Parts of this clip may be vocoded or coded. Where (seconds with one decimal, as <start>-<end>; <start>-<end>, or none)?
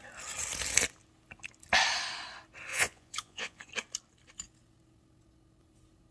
2.7-3.7